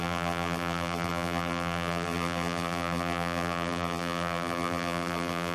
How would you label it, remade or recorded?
remade